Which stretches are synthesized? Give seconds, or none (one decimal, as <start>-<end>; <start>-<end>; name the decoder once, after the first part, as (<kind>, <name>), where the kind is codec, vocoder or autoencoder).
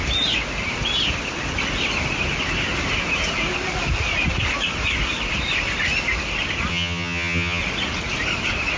6.7-7.6 (vocoder, HiFi-GAN)